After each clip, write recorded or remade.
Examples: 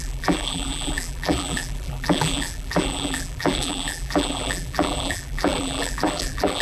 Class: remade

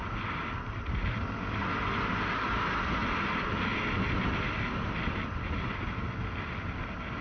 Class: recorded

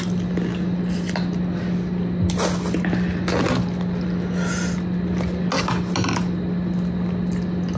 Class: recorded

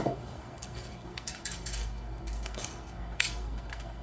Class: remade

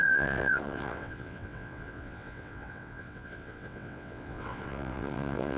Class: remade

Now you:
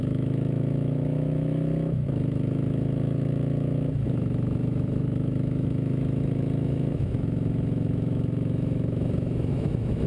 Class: remade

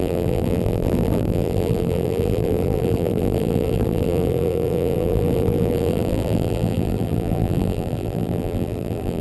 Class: remade